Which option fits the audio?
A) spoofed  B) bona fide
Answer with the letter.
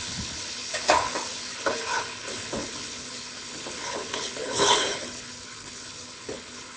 A